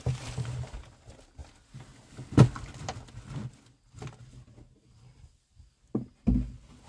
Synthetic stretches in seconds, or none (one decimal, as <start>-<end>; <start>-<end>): none